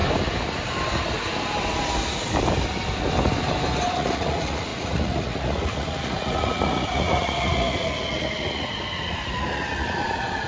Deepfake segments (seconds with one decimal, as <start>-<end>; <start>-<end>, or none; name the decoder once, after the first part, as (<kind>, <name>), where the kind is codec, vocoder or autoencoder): 3.9-10.5 (vocoder, Vocos)